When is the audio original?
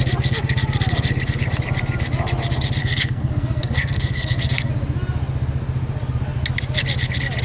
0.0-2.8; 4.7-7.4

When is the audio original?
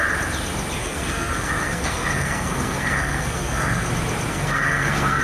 0.0-0.8; 3.9-4.3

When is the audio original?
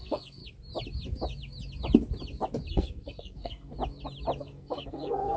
0.4-2.7; 3.7-4.4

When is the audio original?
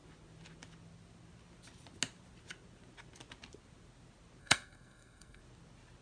0.0-4.4; 5.4-6.0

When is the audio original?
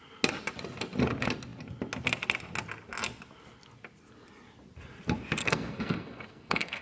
0.0-5.4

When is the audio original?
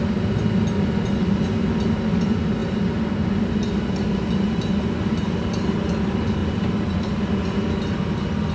0.0-8.5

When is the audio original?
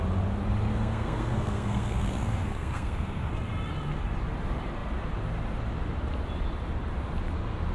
0.0-0.7; 3.3-7.7